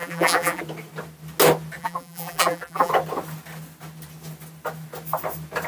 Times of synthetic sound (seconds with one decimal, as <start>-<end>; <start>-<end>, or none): 0.0-0.6; 1.8-2.9